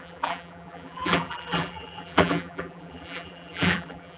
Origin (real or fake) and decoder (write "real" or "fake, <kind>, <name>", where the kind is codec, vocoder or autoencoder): fake, vocoder, BigVGAN v2